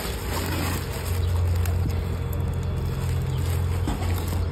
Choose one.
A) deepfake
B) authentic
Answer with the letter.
B